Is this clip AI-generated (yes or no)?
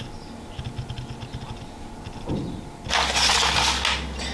no